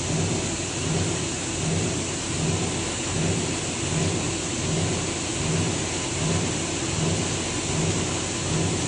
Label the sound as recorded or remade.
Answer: recorded